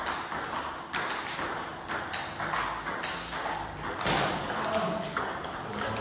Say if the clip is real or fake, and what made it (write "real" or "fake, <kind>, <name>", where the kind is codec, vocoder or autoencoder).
real